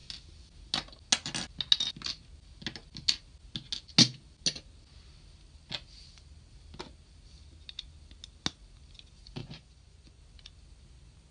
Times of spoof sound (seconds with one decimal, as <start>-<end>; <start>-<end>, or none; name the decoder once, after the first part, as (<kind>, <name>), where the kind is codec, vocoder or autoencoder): 9.4-10.2 (vocoder, Vocos)